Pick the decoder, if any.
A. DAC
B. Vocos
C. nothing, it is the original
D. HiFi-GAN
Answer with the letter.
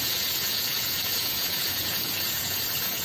B